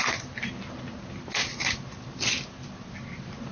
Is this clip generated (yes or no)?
no